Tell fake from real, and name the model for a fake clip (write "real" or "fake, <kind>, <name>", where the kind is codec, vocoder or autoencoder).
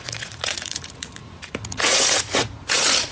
fake, vocoder, Vocos